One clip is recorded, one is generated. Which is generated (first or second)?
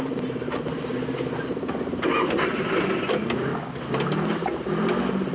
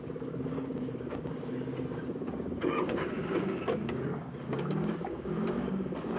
second